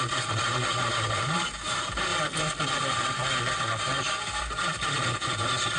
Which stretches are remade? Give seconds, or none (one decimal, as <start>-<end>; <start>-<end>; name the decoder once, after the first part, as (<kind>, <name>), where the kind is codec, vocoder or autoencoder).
0.0-2.1 (vocoder, BigVGAN v2); 2.8-3.2; 4.4-5.8